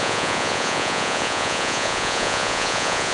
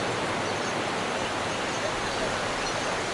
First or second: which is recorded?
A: second